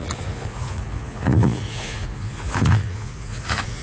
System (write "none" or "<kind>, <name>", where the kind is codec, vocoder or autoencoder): vocoder, Vocos